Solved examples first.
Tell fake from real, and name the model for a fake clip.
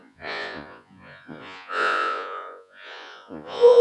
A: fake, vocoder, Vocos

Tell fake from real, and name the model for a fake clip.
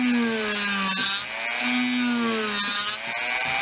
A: real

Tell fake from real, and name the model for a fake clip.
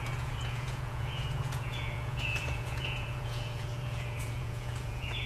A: fake, vocoder, Vocos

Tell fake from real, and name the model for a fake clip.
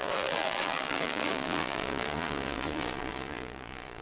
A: fake, vocoder, Vocos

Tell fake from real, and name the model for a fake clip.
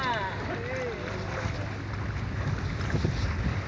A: real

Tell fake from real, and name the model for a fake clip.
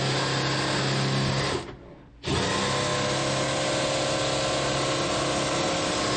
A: real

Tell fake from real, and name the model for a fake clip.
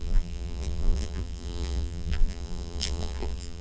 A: fake, vocoder, BigVGAN v2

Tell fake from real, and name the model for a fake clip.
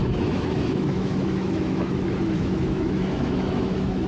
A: fake, autoencoder, DAC-VAE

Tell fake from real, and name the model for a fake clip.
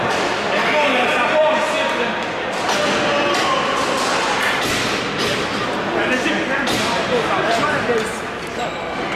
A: real